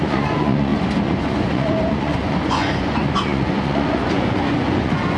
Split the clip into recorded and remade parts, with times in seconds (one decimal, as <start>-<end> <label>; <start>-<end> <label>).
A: 0.0-5.2 remade

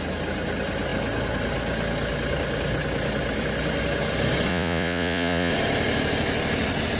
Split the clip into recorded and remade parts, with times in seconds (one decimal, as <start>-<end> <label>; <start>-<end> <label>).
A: 0.0-4.5 recorded; 4.5-5.5 remade; 5.5-7.0 recorded

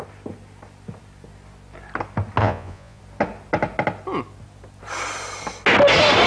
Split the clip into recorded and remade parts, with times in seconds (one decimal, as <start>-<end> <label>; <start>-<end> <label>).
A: 0.0-2.4 recorded; 2.4-3.0 remade; 3.0-6.3 recorded

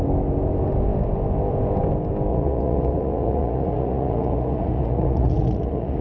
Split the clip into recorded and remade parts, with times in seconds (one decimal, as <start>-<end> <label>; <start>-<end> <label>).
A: 0.0-2.3 recorded; 2.3-6.0 remade

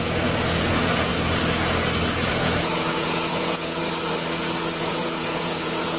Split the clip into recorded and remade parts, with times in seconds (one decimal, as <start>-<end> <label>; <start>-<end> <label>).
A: 0.0-1.1 remade; 1.1-2.3 recorded; 2.3-3.8 remade; 3.8-4.8 recorded; 4.8-6.0 remade

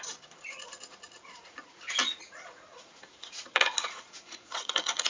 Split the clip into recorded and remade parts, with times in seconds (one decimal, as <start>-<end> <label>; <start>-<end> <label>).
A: 0.0-5.1 remade